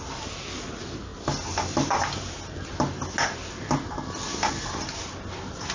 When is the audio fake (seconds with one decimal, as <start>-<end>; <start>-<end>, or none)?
none